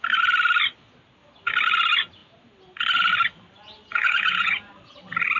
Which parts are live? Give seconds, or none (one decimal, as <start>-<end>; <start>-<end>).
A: 0.0-3.9; 4.7-5.4